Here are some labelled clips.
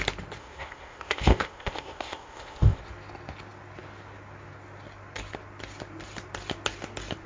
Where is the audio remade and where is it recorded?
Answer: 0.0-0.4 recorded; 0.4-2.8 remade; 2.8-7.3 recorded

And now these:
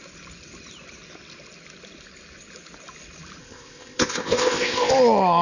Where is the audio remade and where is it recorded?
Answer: 0.0-3.4 recorded; 3.4-4.9 remade; 4.9-5.4 recorded